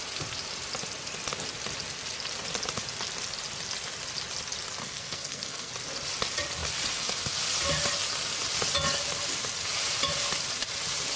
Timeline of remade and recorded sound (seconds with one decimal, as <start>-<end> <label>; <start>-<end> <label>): 0.0-4.8 recorded; 4.8-5.7 remade; 5.7-11.2 recorded